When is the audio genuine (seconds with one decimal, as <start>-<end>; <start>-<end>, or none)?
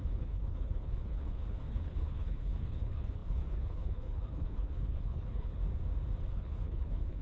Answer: 5.6-6.3